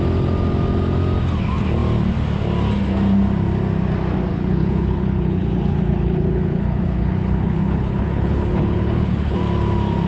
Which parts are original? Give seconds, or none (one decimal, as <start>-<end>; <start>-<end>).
0.0-4.3; 9.4-10.1